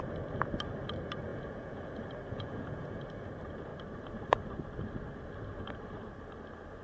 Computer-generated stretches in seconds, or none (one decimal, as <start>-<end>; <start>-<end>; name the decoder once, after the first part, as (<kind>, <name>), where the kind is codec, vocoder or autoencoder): 1.3-1.8 (vocoder, Vocos); 2.3-3.0